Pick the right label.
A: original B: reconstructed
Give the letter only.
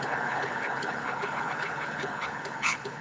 B